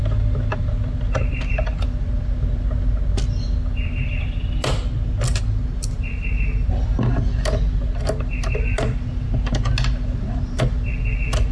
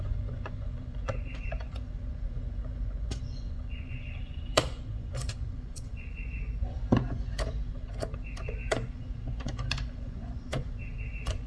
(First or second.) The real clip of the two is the first